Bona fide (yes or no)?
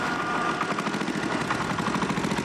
yes